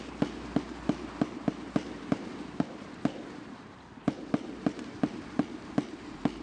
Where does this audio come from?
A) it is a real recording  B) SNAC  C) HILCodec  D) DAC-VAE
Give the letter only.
A